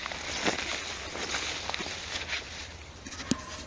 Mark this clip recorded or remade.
recorded